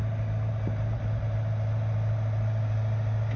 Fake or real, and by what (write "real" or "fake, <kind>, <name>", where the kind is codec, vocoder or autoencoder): real